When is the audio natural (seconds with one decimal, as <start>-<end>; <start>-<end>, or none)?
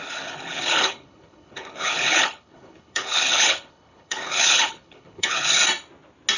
5.6-6.4